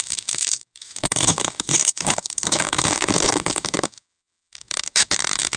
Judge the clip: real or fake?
fake